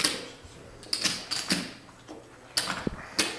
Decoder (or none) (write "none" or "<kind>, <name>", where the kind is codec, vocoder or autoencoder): none